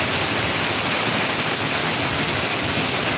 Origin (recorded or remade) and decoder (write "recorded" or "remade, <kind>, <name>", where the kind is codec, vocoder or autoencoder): recorded